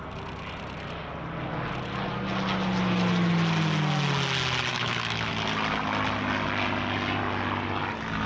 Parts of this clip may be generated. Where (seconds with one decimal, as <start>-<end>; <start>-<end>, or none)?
4.7-5.3